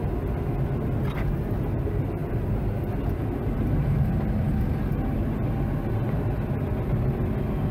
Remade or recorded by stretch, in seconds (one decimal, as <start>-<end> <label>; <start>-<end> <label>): 0.0-7.7 recorded